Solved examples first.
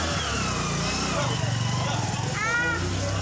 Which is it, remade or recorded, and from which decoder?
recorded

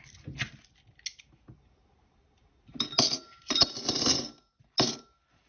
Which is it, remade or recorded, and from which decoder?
recorded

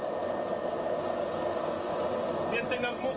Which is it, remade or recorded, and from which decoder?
recorded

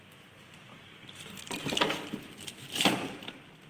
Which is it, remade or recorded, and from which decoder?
recorded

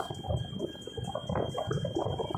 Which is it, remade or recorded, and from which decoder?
recorded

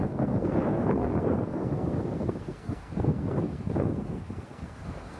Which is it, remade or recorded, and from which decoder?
remade, codec, SNAC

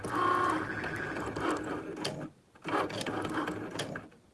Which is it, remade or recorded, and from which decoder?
recorded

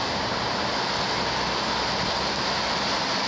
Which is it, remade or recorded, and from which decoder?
recorded